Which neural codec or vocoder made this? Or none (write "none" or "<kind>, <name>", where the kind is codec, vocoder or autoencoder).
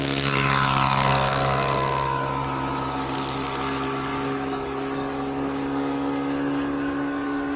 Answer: codec, DAC